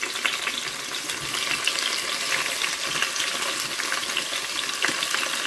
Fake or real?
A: real